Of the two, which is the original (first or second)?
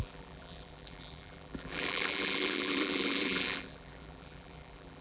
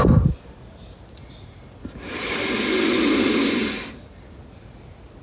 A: second